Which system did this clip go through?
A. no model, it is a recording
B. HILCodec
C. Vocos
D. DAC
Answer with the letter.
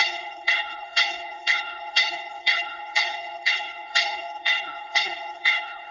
B